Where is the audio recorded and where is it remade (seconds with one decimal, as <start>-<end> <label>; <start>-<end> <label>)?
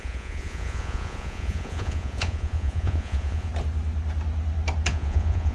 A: 0.0-3.5 remade; 3.5-4.9 recorded; 4.9-5.5 remade